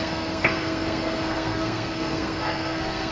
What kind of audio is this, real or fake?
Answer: fake